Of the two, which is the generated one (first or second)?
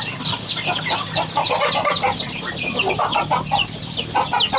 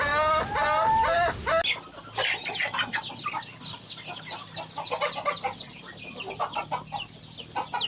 first